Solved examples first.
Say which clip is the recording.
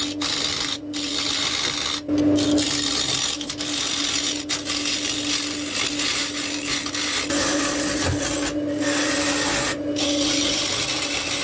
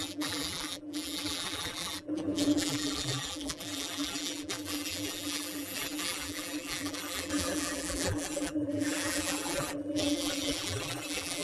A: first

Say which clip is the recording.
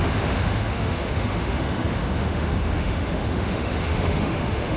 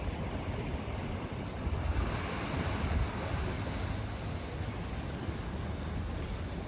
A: second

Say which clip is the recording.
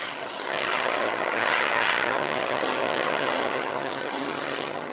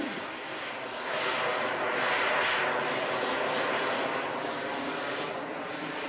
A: second